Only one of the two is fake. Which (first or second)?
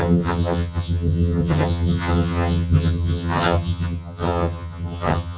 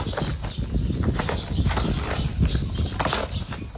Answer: first